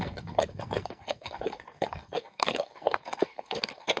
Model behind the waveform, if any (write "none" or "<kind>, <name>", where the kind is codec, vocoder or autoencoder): codec, SNAC